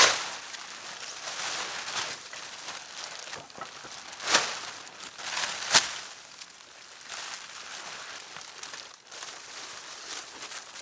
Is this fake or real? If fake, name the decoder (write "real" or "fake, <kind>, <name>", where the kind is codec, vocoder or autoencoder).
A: real